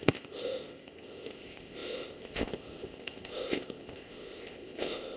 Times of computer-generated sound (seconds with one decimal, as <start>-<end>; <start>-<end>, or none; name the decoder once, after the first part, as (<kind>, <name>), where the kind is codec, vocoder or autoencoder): 0.0-5.2 (codec, ZipCodec)